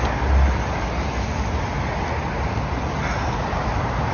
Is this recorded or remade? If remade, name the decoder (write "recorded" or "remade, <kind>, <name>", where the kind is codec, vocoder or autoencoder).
recorded